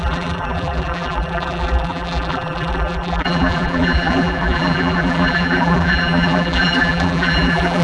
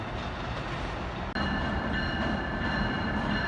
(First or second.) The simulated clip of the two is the first